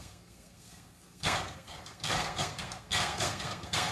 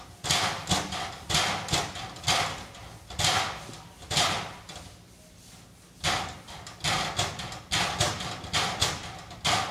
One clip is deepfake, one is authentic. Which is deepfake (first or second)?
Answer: first